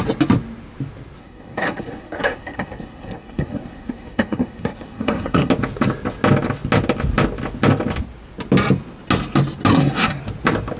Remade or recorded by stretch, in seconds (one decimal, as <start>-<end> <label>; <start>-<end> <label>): 0.0-1.2 recorded; 1.2-5.5 remade; 5.5-9.7 recorded; 9.7-10.2 remade; 10.2-10.8 recorded